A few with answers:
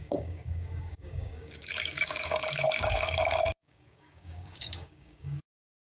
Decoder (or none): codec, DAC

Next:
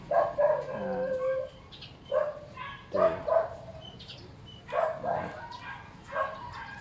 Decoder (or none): none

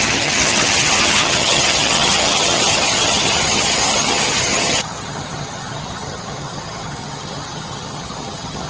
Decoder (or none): vocoder, HiFi-GAN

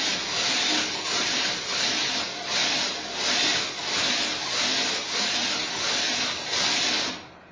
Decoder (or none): none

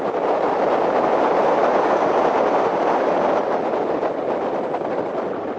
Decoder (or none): none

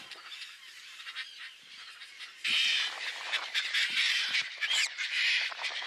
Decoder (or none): vocoder, BigVGAN v2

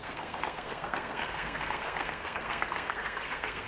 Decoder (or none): codec, SNAC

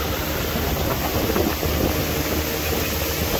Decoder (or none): none